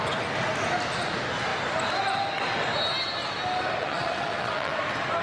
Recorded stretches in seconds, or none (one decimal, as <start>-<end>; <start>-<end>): 0.0-3.8; 4.8-5.2